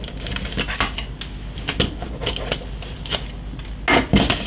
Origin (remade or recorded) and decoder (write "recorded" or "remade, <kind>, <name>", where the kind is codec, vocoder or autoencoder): recorded